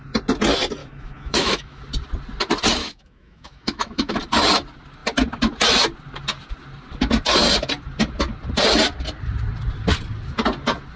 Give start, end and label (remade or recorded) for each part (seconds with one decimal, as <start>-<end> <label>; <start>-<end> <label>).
0.0-0.8 recorded; 0.8-1.8 remade; 1.8-2.8 recorded; 2.8-4.2 remade; 4.2-11.0 recorded